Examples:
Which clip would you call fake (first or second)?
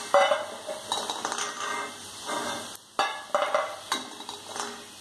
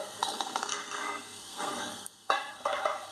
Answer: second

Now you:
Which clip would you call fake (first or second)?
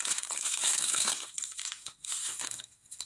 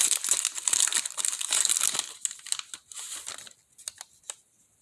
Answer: first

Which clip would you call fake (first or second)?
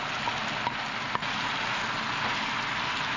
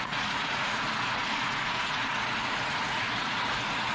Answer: second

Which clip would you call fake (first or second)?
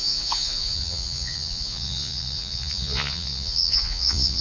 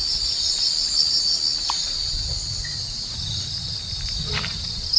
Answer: first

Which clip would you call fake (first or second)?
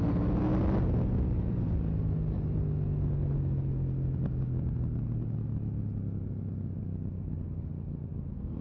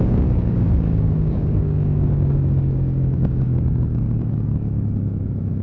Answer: second